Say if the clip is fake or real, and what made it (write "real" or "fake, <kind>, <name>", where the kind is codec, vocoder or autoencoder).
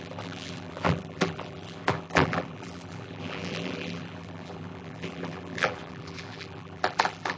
fake, vocoder, BigVGAN v2